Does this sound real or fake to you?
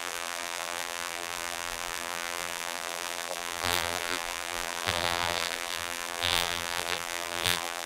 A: fake